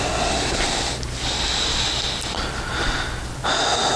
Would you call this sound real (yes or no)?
yes